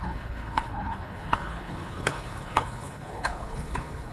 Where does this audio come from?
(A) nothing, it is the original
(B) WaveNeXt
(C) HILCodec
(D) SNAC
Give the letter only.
C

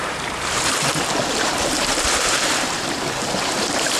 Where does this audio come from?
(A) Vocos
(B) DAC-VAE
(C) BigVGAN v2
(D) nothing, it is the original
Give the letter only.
C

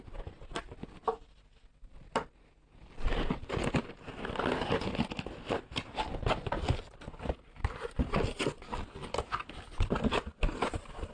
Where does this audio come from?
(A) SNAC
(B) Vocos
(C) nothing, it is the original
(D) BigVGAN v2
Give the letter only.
C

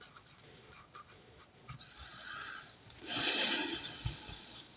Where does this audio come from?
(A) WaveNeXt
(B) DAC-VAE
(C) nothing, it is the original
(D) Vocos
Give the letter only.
D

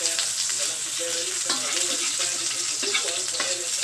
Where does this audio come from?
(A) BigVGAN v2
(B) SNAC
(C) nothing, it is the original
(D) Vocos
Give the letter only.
C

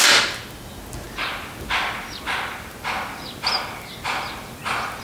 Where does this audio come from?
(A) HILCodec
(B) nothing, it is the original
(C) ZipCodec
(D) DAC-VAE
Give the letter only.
B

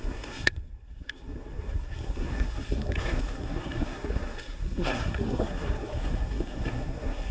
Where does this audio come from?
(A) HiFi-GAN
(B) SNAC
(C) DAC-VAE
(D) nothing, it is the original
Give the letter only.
B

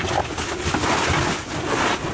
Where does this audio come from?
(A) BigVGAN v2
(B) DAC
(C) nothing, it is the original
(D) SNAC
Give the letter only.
C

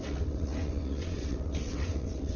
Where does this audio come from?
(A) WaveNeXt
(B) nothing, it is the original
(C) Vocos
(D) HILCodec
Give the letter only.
A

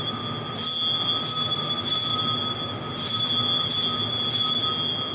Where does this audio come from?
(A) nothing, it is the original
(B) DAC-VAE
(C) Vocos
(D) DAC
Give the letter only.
A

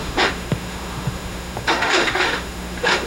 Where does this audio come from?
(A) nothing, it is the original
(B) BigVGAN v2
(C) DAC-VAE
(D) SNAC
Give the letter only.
C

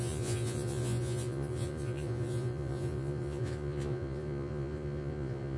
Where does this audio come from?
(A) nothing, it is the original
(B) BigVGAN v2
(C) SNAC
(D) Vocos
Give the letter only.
D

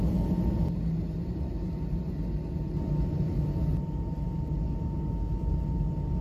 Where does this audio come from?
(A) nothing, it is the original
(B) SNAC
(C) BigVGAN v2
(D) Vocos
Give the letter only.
A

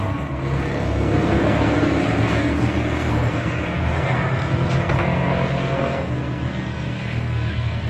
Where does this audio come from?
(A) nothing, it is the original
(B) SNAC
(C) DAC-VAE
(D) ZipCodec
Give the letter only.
B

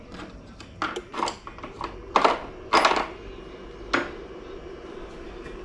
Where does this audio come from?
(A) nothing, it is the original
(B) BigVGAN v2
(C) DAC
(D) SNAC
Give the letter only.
A